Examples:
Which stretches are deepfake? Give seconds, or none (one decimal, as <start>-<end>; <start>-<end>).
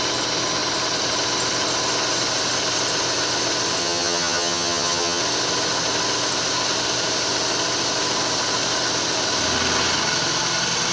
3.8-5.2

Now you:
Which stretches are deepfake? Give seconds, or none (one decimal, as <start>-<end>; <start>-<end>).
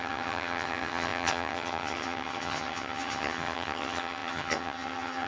0.0-5.3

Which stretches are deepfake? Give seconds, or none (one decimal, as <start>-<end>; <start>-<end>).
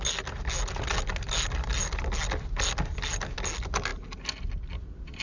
none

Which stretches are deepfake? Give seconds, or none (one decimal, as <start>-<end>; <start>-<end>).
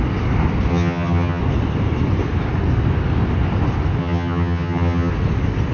0.7-1.4; 4.0-5.1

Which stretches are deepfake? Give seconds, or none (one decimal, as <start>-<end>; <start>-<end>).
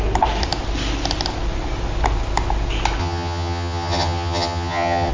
3.0-5.1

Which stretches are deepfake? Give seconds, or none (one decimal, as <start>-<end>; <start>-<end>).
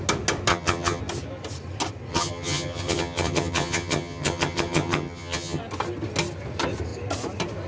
0.5-1.0; 2.1-5.6